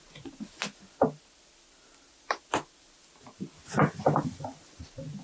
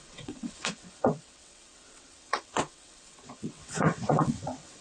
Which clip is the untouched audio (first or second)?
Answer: first